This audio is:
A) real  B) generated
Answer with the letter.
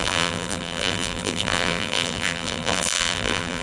B